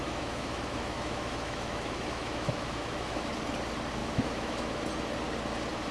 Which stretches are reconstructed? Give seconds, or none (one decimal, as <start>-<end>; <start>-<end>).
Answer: 0.0-3.3; 4.0-4.9